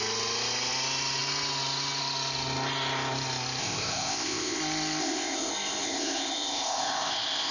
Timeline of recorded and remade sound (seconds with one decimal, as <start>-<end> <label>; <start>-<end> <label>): 0.0-3.6 recorded; 3.6-4.6 remade; 4.6-5.0 recorded; 5.0-7.5 remade